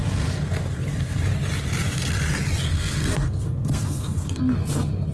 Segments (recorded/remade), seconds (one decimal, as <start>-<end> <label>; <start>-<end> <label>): 0.0-1.2 remade; 1.2-2.7 recorded; 2.7-4.4 remade; 4.4-5.1 recorded